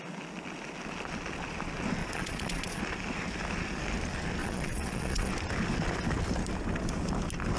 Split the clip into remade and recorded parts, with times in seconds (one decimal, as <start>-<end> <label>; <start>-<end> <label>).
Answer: 0.0-2.0 recorded; 2.0-2.8 remade; 2.8-4.4 recorded; 4.4-5.3 remade; 5.3-7.6 recorded